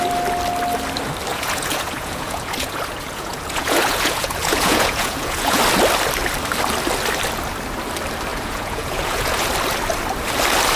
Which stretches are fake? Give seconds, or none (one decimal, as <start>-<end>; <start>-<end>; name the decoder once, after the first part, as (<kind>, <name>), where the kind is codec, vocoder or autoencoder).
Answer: 1.3-5.6 (vocoder, Vocos); 8.3-9.5